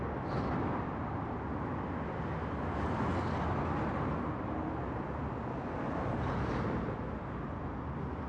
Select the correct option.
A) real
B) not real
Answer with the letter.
A